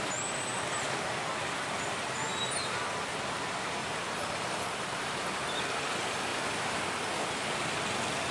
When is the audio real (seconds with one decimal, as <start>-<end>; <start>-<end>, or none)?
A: 0.0-3.8; 5.3-8.3